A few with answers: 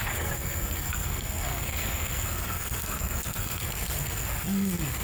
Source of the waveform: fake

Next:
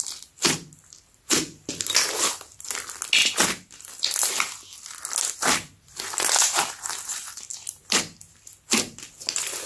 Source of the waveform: real